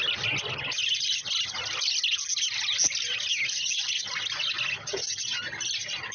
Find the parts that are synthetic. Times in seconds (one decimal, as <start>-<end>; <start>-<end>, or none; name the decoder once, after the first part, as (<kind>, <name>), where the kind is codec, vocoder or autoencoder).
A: none